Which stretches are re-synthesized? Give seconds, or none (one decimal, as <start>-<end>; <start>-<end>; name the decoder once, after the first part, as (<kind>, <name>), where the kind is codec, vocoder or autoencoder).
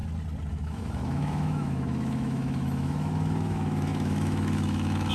0.5-5.1 (autoencoder, DAC-VAE)